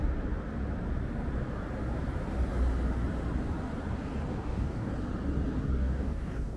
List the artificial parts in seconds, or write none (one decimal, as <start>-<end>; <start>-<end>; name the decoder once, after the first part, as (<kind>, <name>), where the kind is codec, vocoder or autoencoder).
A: 4.3-4.9 (codec, DAC); 5.7-6.6